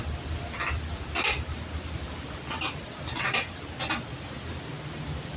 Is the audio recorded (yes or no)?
yes